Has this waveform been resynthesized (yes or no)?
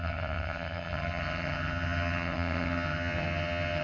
yes